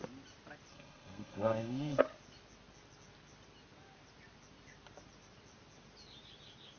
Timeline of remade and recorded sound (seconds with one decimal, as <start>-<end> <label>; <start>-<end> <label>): 0.0-0.7 recorded; 0.7-2.0 remade; 2.0-6.8 recorded